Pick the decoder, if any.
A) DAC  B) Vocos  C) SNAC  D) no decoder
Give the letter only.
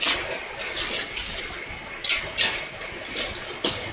D